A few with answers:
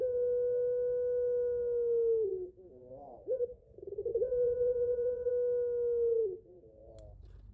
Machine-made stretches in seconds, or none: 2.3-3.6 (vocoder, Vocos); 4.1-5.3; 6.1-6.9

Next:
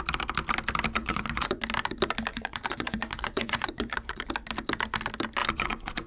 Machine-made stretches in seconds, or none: 1.0-1.6 (vocoder, Vocos); 2.3-4.3; 5.4-6.1

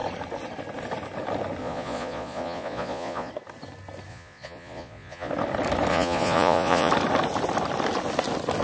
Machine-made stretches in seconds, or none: 1.6-3.3 (vocoder, Vocos); 4.1-5.3; 5.9-6.9

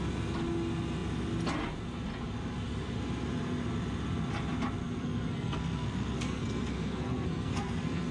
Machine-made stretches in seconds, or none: 4.8-8.1 (codec, SNAC)

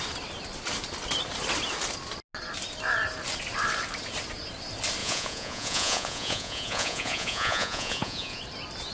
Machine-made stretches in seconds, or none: 5.0-8.4 (vocoder, Vocos)

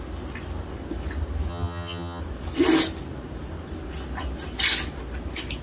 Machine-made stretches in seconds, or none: 1.5-2.2 (vocoder, HiFi-GAN)

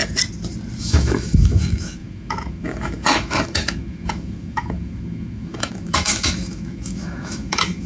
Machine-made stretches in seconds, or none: 0.8-7.9 (autoencoder, DAC-VAE)